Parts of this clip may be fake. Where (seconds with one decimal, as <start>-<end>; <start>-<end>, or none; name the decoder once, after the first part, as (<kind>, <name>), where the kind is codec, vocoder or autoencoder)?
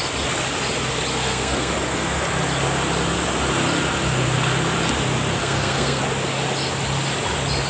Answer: 1.1-1.7 (codec, SNAC); 5.4-6.0